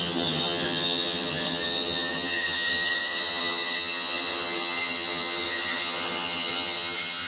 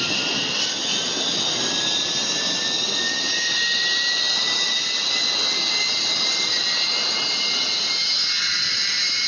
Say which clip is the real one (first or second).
second